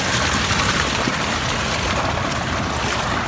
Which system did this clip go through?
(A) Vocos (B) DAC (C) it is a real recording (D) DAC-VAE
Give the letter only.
C